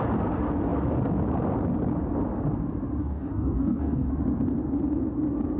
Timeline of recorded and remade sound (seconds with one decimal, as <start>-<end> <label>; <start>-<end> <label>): 0.0-3.0 recorded; 3.0-4.1 remade; 4.1-5.6 recorded